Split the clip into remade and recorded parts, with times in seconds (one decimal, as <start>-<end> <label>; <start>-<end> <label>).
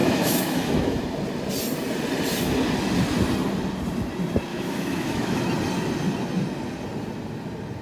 0.0-1.0 remade; 1.0-4.5 recorded; 4.5-5.4 remade; 5.4-7.8 recorded